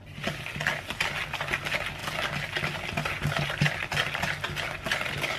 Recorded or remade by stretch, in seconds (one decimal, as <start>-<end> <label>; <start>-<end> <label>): 0.0-5.4 recorded